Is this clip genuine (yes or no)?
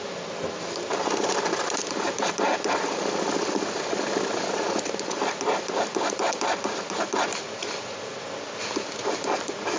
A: yes